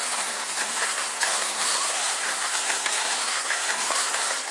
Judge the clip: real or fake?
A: fake